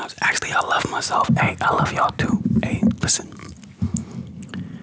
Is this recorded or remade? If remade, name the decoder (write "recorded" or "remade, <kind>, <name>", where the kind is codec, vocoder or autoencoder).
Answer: recorded